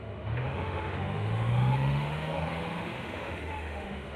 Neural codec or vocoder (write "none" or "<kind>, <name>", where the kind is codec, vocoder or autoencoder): autoencoder, DAC-VAE